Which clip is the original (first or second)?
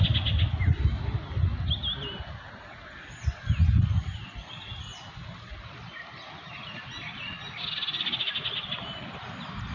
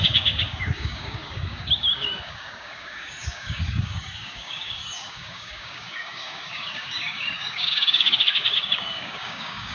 first